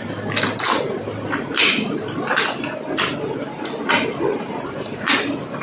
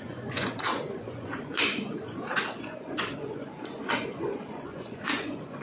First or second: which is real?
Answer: first